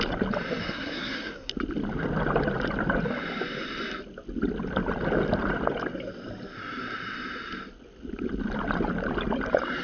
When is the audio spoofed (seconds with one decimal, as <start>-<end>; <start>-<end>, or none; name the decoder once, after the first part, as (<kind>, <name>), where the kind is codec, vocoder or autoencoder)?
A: 0.6-1.5 (codec, SNAC)